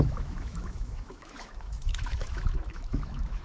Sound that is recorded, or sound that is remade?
remade